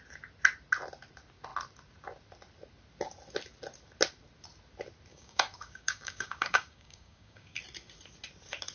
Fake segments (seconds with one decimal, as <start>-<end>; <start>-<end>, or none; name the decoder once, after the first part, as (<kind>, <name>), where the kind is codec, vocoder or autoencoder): 5.1-7.6 (codec, DAC)